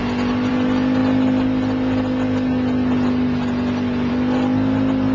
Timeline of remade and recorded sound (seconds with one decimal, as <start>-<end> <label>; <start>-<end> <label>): 0.0-5.1 recorded